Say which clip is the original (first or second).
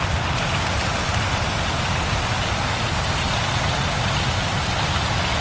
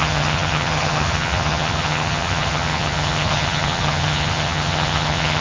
first